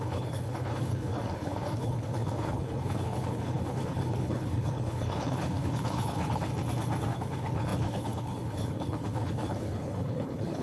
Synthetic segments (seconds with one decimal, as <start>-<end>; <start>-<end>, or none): 0.0-6.5; 7.1-10.6